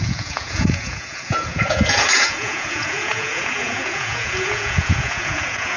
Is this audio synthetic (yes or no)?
yes